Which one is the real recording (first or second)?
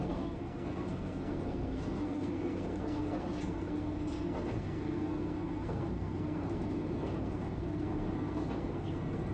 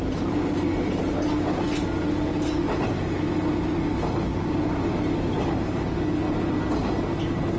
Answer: second